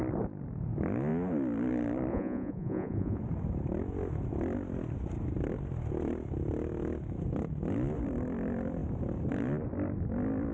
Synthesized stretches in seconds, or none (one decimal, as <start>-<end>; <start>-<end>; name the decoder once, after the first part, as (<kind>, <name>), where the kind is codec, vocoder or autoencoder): 2.1-3.2 (vocoder, Vocos)